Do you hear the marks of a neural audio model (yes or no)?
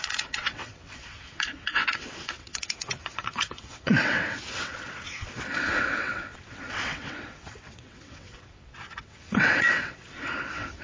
yes